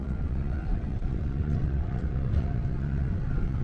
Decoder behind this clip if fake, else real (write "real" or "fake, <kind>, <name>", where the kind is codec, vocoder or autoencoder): fake, vocoder, WaveNeXt